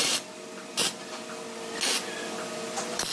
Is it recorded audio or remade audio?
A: recorded